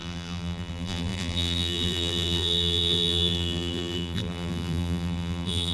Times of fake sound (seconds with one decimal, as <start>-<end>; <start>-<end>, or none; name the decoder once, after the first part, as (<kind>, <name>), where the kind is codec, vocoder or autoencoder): 0.0-5.7 (vocoder, BigVGAN v2)